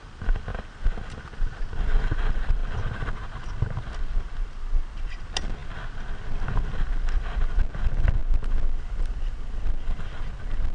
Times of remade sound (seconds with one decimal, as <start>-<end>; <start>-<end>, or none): none